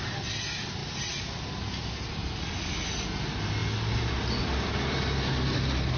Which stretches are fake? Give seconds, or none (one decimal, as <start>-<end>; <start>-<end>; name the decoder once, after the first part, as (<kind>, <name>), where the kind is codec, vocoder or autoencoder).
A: none